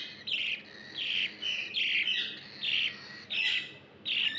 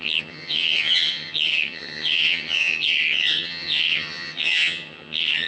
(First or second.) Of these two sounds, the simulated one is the second